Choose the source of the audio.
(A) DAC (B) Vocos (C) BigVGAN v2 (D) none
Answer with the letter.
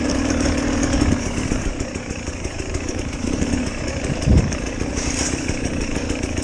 A